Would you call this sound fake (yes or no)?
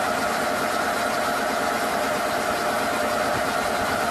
no